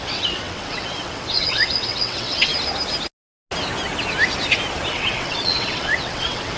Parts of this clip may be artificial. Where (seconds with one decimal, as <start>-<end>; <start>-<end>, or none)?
0.0-2.5; 4.9-6.6